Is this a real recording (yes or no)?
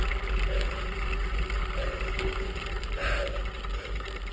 yes